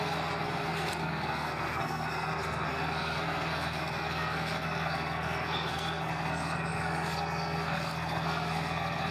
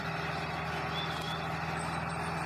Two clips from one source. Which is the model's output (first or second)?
first